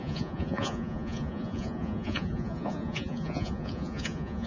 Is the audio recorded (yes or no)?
no